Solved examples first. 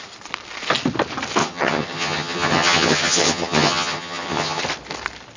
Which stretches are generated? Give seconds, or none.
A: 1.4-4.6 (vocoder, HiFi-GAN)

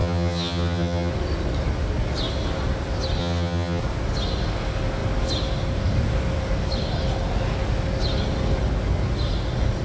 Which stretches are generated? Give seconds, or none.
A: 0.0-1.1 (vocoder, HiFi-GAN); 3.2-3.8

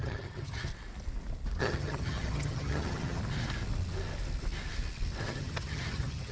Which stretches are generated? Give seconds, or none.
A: 0.0-0.7 (vocoder, HiFi-GAN); 1.6-3.2; 5.2-6.3